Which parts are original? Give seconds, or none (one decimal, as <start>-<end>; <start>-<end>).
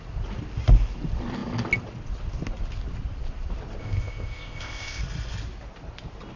0.0-3.8; 5.0-6.4